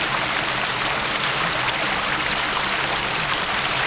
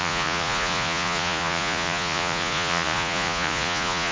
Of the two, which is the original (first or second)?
first